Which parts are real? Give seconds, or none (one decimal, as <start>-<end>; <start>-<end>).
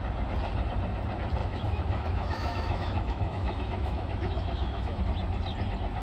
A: 0.0-1.4; 5.0-6.0